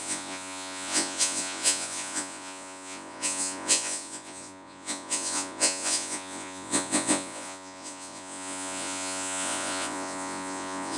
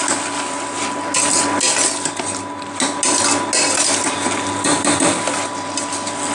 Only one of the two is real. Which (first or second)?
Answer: second